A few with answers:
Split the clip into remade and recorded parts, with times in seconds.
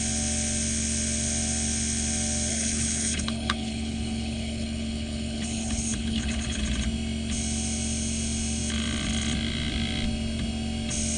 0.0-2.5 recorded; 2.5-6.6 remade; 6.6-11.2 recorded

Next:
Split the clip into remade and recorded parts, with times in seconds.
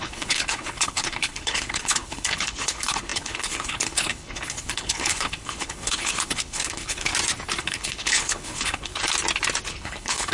0.0-7.1 remade; 7.1-7.6 recorded; 7.6-8.9 remade; 8.9-9.7 recorded; 9.7-10.3 remade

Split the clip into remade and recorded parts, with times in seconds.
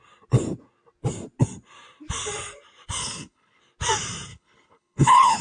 0.0-3.0 recorded; 3.0-3.6 remade; 3.6-4.3 recorded; 4.3-5.4 remade